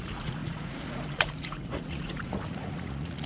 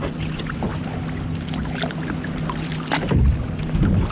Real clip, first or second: second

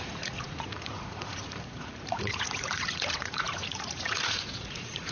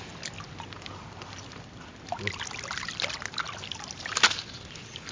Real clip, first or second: second